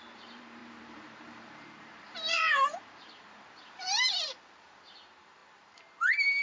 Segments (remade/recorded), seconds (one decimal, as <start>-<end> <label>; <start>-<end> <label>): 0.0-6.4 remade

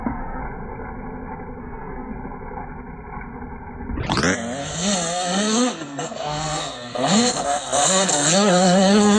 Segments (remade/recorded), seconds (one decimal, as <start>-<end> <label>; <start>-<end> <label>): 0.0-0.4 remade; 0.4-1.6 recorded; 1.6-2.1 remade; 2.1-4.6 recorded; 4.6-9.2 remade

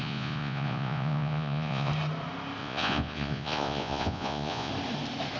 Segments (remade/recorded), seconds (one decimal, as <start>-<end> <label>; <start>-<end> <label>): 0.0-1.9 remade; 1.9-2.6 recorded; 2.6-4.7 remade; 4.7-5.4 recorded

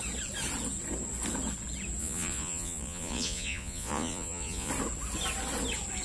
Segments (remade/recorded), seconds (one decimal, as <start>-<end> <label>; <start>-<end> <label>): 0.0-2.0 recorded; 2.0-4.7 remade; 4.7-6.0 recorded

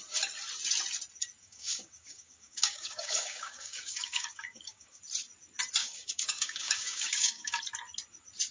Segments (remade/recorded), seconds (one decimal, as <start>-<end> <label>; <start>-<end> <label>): 0.0-1.4 recorded; 1.4-5.0 remade; 5.0-5.8 recorded; 5.8-7.6 remade; 7.6-8.5 recorded

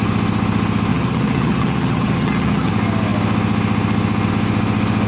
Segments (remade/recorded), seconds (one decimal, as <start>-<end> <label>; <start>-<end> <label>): 0.0-0.9 recorded; 0.9-2.7 remade; 2.7-5.1 recorded

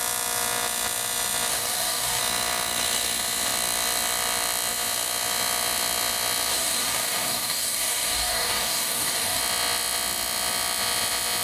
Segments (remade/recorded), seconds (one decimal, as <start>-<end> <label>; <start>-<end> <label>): 0.0-1.5 recorded; 1.5-2.2 remade; 2.2-6.5 recorded; 6.5-9.4 remade; 9.4-11.4 recorded